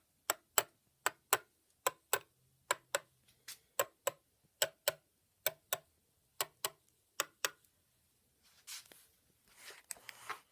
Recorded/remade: recorded